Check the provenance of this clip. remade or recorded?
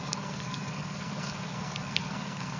remade